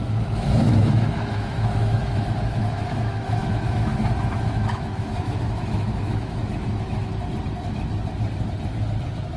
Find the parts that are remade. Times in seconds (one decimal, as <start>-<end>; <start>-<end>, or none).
0.0-7.1